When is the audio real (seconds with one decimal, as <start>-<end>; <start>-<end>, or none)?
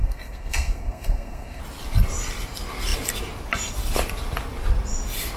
1.6-5.4